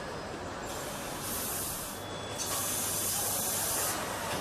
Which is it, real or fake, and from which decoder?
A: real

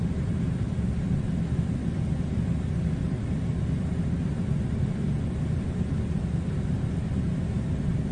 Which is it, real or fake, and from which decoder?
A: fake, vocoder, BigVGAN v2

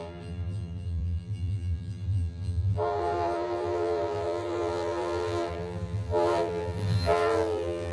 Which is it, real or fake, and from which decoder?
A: fake, vocoder, BigVGAN v2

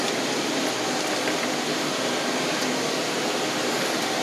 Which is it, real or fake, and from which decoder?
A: real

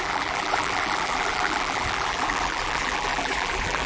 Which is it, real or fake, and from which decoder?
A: fake, vocoder, BigVGAN v2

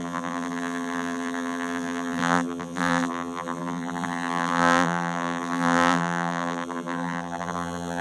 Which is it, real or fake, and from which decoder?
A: fake, vocoder, BigVGAN v2